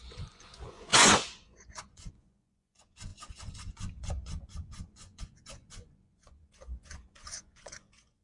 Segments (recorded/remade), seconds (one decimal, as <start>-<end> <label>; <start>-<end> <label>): 0.0-8.2 remade